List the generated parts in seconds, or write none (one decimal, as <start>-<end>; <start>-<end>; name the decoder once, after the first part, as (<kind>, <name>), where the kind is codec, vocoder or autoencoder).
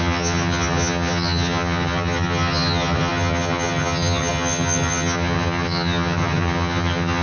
0.0-7.2 (vocoder, HiFi-GAN)